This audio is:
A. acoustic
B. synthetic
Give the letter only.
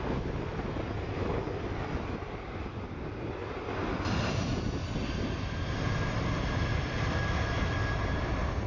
A